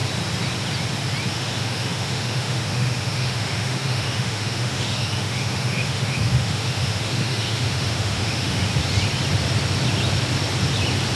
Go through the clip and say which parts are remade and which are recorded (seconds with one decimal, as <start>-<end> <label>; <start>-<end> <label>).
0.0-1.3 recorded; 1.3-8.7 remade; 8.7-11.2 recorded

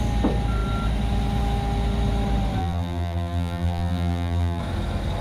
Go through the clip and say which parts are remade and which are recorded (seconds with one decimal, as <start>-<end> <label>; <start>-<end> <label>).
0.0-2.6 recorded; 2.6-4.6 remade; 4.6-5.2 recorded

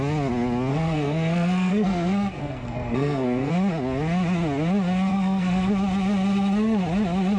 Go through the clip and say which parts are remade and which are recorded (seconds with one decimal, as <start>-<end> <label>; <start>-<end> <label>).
0.0-0.7 recorded; 0.7-3.5 remade; 3.5-5.1 recorded; 5.1-5.7 remade; 5.7-7.4 recorded

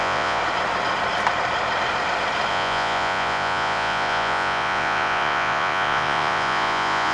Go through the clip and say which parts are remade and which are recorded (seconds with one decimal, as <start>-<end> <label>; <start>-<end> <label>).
0.0-0.4 remade; 0.4-2.5 recorded; 2.5-7.1 remade

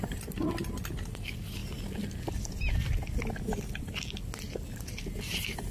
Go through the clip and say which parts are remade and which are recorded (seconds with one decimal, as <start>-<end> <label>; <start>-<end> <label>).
0.0-1.6 remade; 1.6-5.0 recorded; 5.0-5.7 remade

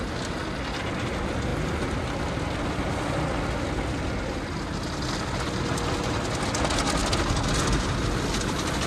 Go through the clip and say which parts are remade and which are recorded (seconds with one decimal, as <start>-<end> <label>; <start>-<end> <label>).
0.0-8.9 recorded

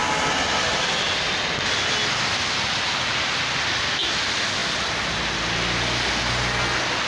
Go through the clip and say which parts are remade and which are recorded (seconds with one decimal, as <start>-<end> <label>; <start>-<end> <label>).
0.0-7.1 recorded

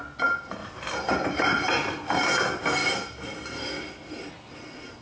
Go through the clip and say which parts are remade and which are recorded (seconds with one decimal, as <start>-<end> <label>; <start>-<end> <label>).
0.0-5.0 recorded